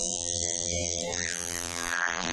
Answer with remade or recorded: remade